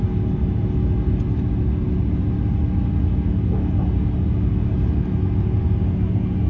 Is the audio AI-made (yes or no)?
no